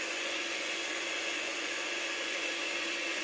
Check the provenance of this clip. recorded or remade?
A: remade